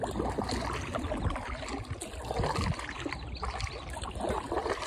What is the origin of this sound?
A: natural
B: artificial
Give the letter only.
A